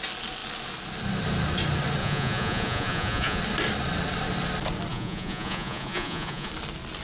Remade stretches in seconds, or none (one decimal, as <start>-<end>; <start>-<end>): 2.0-3.4; 4.9-6.5